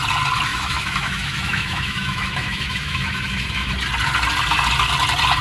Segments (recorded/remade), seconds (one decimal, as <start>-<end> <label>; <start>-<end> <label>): 0.0-0.5 recorded; 0.5-3.7 remade; 3.7-5.4 recorded